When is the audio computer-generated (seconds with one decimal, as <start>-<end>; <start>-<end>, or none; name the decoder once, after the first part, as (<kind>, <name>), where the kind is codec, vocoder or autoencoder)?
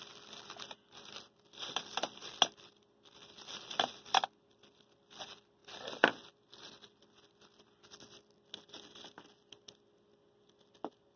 none